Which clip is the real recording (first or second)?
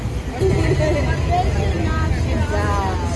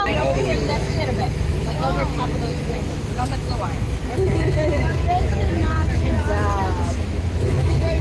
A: first